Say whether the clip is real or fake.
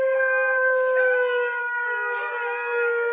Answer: real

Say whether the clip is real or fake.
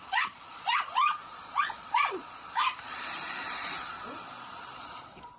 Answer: fake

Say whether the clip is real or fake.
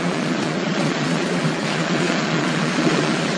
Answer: fake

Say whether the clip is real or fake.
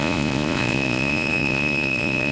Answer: fake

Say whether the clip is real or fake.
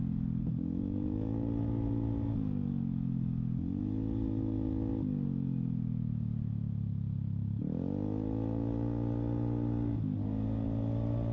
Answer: real